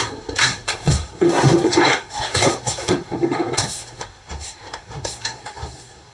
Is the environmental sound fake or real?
fake